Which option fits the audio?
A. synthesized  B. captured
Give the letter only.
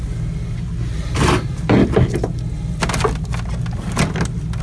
B